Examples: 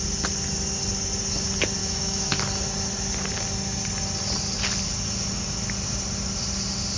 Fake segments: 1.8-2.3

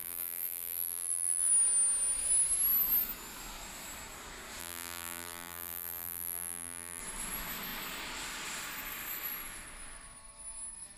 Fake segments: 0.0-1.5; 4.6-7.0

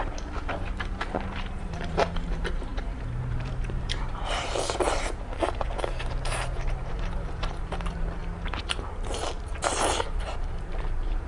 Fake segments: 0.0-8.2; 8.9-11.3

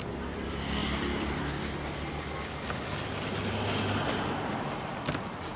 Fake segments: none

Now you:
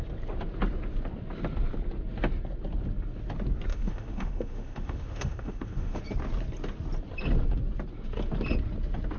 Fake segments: 3.7-6.0

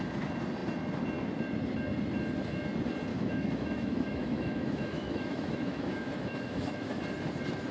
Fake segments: 3.1-7.0

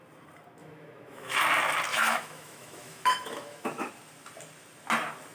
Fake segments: 0.6-1.4; 1.9-3.9